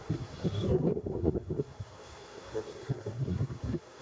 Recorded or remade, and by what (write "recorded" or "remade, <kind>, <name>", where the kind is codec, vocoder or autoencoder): remade, codec, SNAC